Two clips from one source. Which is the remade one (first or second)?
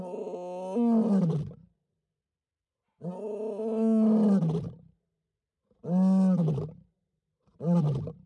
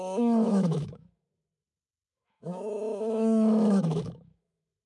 second